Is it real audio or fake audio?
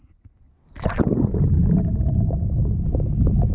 real